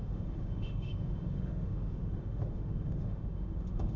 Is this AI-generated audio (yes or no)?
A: yes